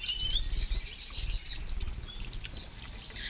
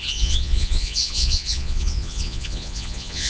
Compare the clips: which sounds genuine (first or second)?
first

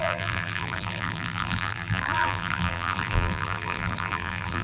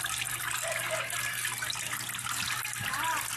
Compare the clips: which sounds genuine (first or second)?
second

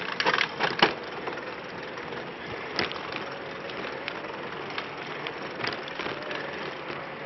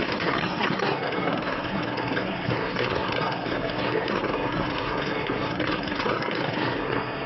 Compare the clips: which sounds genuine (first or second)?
first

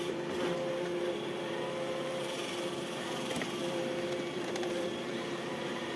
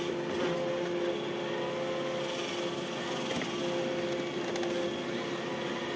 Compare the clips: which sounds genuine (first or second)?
second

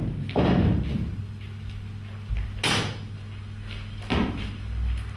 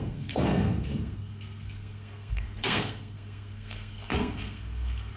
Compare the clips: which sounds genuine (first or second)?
first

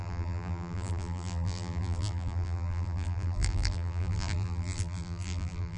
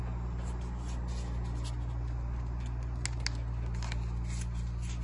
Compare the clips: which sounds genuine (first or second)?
second